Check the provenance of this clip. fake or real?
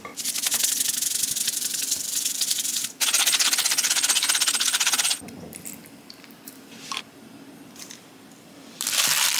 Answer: fake